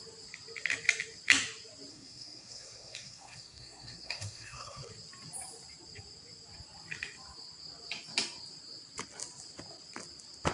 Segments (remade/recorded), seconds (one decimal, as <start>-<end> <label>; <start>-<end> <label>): 0.0-1.9 recorded; 1.9-4.9 remade; 4.9-10.5 recorded